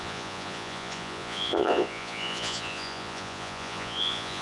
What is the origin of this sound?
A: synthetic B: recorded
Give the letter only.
A